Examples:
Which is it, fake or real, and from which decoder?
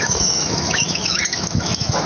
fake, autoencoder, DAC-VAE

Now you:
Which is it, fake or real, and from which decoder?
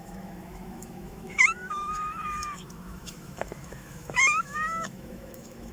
fake, autoencoder, DAC-VAE